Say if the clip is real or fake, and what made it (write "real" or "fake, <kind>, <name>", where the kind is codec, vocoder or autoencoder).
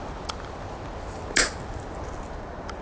real